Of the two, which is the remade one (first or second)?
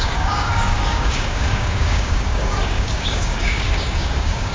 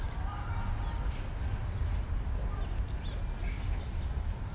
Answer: first